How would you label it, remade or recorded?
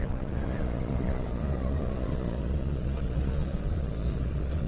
remade